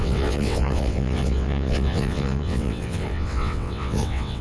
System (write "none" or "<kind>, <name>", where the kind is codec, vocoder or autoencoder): vocoder, WaveNeXt